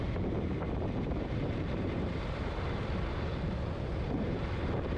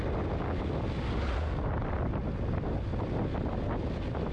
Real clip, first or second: second